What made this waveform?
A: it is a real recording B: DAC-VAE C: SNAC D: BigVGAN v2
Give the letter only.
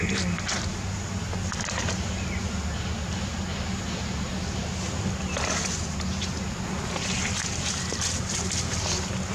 A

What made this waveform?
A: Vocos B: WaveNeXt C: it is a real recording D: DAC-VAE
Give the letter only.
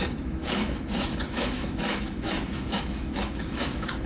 D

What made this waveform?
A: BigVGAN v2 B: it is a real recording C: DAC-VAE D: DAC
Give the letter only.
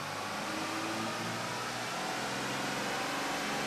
B